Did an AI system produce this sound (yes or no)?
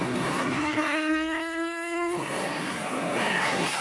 yes